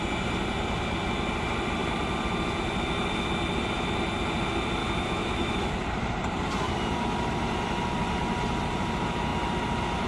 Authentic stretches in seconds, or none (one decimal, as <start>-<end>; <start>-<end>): 0.0-4.8; 5.7-10.1